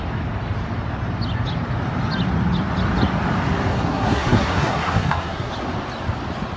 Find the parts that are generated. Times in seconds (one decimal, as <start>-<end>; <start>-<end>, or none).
3.7-5.5

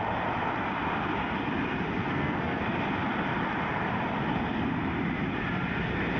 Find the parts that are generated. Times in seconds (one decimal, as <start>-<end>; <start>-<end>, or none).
2.0-2.6

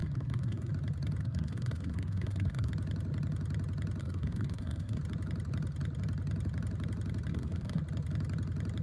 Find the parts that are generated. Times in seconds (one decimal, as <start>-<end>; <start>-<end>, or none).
0.0-0.7; 1.2-2.7; 4.0-5.0; 7.3-7.8

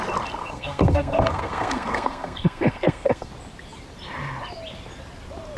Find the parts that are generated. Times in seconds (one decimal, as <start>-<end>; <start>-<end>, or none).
0.4-3.3